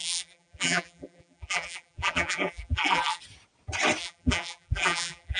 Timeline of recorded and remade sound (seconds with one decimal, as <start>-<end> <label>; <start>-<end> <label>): 0.0-3.2 remade; 3.2-4.0 recorded; 4.0-5.4 remade